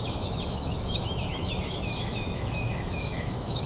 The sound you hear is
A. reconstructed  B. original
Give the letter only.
A